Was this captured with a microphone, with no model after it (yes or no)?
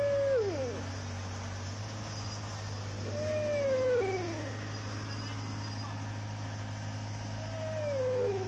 yes